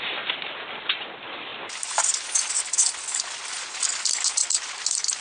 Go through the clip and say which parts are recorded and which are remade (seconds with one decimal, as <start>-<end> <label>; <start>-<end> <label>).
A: 0.0-5.2 recorded